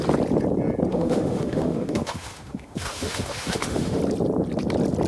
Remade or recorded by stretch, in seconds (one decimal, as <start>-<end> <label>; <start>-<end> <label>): 0.0-0.9 recorded; 0.9-4.0 remade; 4.0-5.1 recorded